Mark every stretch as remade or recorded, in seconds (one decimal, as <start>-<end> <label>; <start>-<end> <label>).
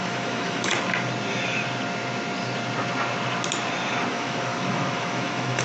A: 0.0-0.7 remade; 0.7-4.1 recorded; 4.1-5.6 remade